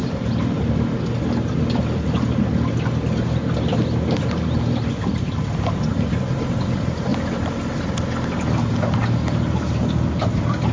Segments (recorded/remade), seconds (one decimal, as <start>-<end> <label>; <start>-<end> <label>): 0.0-0.6 remade; 0.6-10.7 recorded